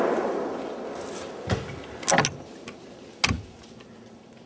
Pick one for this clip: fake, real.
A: real